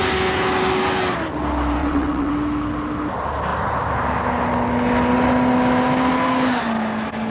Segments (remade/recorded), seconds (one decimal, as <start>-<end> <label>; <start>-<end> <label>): 0.0-1.8 recorded; 1.8-2.3 remade; 2.3-7.3 recorded